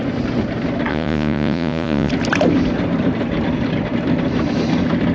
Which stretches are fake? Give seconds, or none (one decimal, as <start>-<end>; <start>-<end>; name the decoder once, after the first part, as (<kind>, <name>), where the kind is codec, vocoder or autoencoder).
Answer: 0.9-2.1 (vocoder, Vocos)